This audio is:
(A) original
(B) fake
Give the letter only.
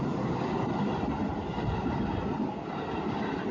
B